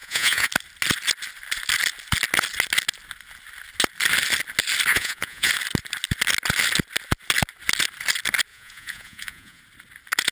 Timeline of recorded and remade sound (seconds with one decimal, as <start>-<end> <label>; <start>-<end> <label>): 0.0-0.5 remade; 0.5-4.9 recorded; 4.9-5.5 remade; 5.5-8.5 recorded; 8.5-9.6 remade; 9.6-10.3 recorded

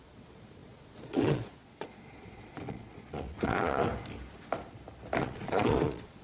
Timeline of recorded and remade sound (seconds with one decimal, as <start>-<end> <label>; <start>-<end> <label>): 0.0-3.9 remade; 3.9-5.2 recorded; 5.2-6.2 remade